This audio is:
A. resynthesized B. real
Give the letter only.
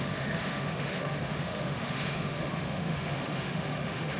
A